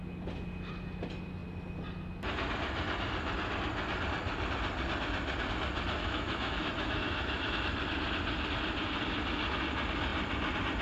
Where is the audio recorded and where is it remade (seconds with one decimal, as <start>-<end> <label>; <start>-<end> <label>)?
0.0-6.0 recorded; 6.0-7.7 remade; 7.7-10.8 recorded

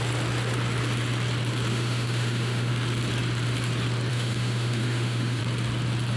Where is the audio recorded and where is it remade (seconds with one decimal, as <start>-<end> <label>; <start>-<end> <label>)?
0.0-1.7 recorded; 1.7-2.7 remade; 2.7-4.1 recorded; 4.1-5.4 remade; 5.4-6.2 recorded

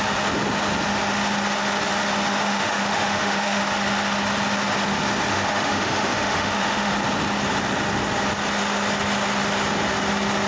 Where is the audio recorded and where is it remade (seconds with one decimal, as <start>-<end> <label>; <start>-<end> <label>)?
0.0-2.3 recorded; 2.3-3.6 remade; 3.6-5.3 recorded; 5.3-6.9 remade; 6.9-10.5 recorded

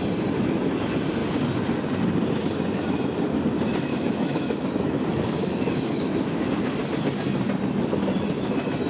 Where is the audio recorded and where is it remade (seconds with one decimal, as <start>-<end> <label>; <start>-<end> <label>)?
0.0-3.9 recorded; 3.9-6.5 remade; 6.5-8.9 recorded

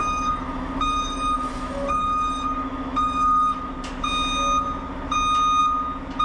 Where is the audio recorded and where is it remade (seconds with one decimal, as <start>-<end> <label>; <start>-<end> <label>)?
0.0-3.7 remade; 3.7-6.2 recorded

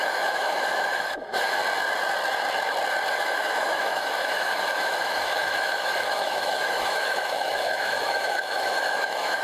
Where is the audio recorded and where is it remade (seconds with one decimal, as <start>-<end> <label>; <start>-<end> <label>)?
0.0-1.6 remade; 1.6-3.1 recorded; 3.1-9.4 remade

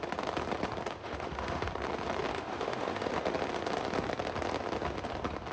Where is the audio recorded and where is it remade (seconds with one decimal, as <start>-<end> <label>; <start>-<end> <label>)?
0.0-1.0 recorded; 1.0-1.7 remade; 1.7-2.3 recorded; 2.3-3.1 remade; 3.1-5.5 recorded